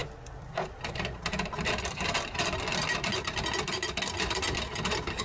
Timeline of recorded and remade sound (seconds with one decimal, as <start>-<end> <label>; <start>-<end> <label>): 0.0-5.2 recorded